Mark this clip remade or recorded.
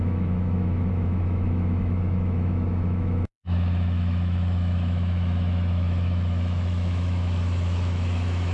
remade